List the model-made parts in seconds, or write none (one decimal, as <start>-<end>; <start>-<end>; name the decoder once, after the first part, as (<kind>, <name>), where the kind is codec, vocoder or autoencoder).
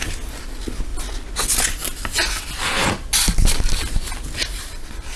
none